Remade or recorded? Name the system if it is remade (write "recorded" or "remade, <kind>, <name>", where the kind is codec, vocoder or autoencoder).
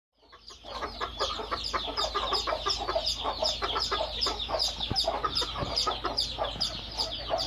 remade, vocoder, BigVGAN v2